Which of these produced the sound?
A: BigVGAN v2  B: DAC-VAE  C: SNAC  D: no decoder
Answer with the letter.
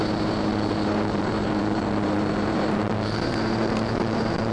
A